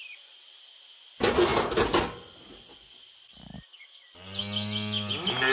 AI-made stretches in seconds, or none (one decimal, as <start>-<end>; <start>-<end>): none

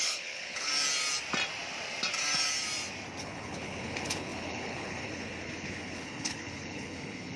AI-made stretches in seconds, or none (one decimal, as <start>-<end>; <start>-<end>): 0.0-0.7; 3.2-7.4

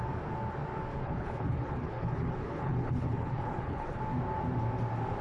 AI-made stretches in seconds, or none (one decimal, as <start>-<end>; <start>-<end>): 0.9-4.0

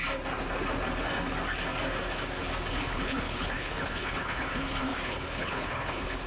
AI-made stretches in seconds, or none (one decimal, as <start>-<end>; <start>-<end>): 2.7-6.3

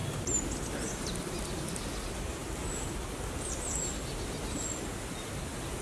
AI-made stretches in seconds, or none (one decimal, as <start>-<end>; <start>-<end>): none

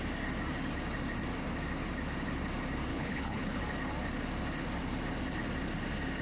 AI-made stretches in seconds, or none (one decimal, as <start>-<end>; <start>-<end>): 2.9-3.6

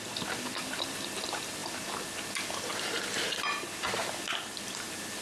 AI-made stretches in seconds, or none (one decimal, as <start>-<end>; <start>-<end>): none